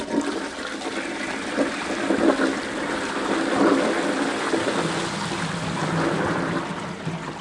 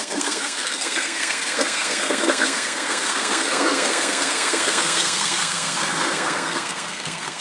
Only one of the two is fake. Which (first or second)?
second